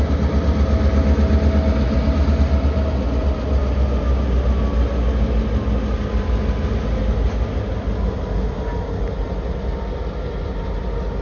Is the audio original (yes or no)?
yes